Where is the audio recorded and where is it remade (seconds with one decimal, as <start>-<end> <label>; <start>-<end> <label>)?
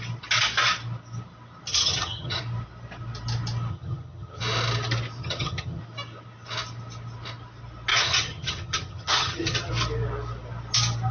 0.0-1.7 recorded; 1.7-2.4 remade; 2.4-3.7 recorded; 3.7-4.4 remade; 4.4-5.2 recorded; 5.2-5.8 remade; 5.8-7.9 recorded; 7.9-9.7 remade; 9.7-11.1 recorded